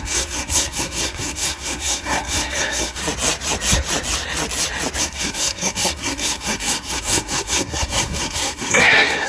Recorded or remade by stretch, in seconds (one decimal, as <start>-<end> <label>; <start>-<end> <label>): 0.0-3.0 remade; 3.0-5.0 recorded; 5.0-9.3 remade